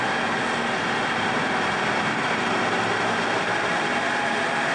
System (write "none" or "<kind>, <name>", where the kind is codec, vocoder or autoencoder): none